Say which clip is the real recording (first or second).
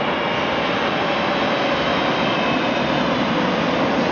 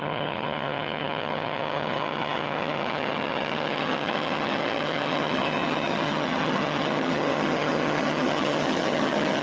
first